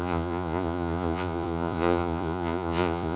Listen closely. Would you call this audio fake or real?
fake